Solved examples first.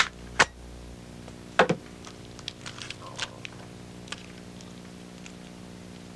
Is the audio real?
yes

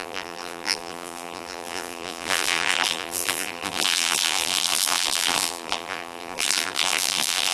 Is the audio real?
no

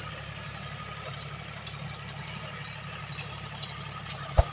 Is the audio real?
yes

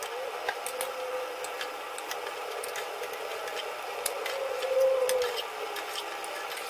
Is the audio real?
yes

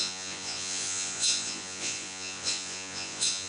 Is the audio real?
no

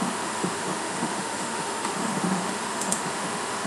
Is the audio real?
no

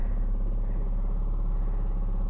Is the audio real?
yes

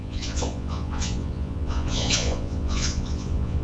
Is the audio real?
no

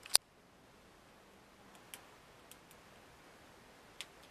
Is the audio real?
yes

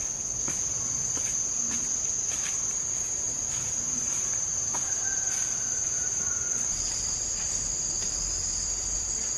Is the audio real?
no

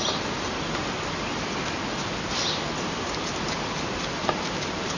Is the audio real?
yes